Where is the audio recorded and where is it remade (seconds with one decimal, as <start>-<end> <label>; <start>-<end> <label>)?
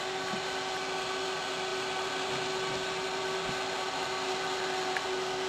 0.0-5.5 recorded